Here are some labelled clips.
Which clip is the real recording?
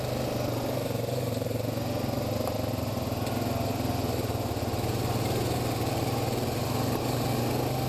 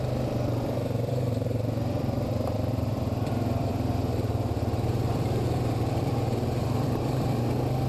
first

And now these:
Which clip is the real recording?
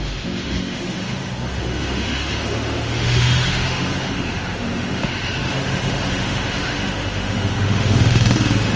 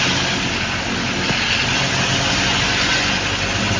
second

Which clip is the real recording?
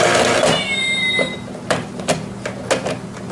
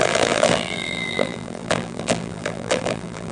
first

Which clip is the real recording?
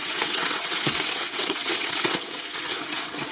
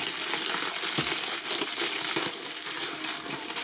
second